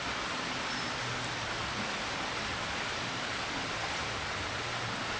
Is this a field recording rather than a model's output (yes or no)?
yes